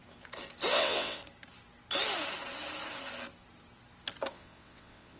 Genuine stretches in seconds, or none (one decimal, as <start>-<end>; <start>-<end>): 0.0-0.7; 1.2-4.3